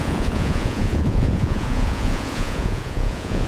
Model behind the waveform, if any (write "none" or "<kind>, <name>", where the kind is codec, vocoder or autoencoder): vocoder, Vocos